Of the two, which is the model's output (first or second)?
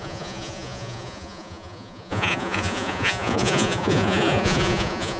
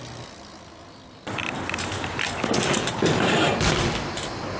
first